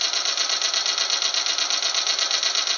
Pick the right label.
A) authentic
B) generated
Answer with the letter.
A